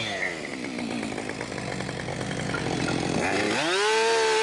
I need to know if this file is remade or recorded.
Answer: recorded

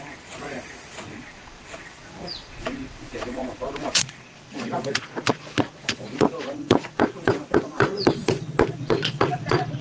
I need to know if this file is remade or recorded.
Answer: remade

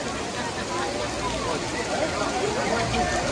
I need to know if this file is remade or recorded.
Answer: recorded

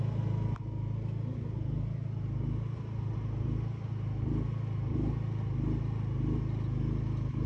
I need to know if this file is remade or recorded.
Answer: recorded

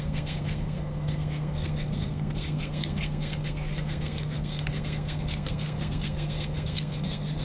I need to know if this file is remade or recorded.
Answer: remade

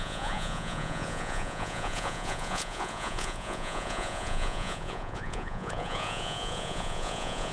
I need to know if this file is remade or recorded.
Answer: remade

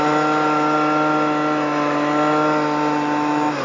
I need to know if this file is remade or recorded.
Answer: recorded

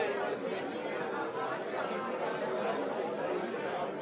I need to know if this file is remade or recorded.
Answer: recorded